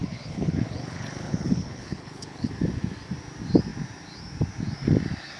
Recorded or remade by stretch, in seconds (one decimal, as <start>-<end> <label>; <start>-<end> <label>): 0.0-2.5 remade; 2.5-5.4 recorded